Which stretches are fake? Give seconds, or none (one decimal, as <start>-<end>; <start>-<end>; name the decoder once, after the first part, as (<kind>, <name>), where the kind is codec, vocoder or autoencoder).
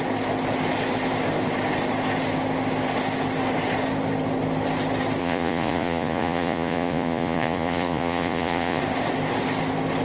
5.2-8.8 (vocoder, Vocos)